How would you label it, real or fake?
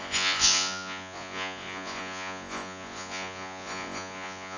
fake